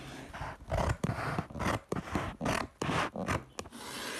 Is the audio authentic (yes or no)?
yes